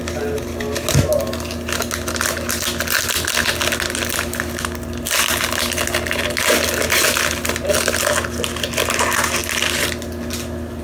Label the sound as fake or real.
real